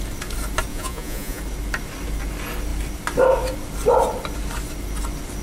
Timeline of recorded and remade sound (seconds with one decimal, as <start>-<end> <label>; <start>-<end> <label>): 0.0-0.7 recorded; 0.7-1.4 remade; 1.4-5.4 recorded